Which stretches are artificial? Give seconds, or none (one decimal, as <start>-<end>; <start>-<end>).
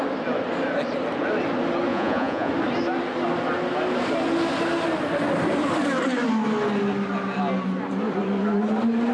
1.9-2.5